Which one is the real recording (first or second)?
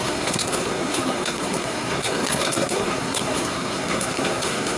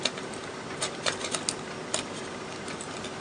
second